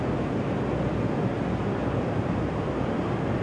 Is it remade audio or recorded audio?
recorded